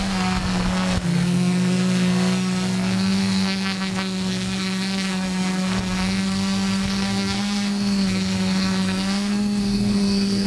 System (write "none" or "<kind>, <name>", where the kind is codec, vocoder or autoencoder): codec, SNAC